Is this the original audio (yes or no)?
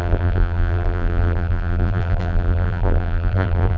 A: no